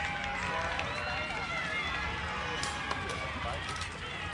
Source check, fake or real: real